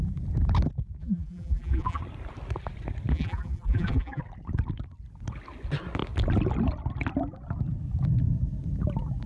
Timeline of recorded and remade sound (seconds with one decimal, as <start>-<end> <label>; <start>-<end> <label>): 0.0-1.0 recorded; 1.0-2.0 remade; 2.0-3.1 recorded; 3.1-4.2 remade; 4.2-9.3 recorded